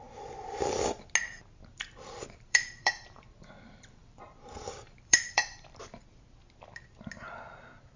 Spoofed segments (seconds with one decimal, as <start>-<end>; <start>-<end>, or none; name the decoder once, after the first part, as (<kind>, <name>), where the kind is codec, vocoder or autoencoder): 1.7-5.8 (vocoder, BigVGAN v2)